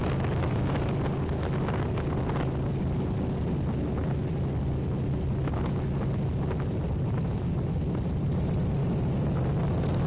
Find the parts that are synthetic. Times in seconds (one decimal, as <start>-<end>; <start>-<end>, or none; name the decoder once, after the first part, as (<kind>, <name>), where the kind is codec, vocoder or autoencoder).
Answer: none